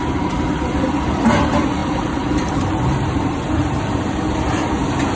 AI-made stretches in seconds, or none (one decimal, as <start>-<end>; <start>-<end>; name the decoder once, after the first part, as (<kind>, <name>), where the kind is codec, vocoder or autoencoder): 1.8-3.8 (vocoder, BigVGAN v2)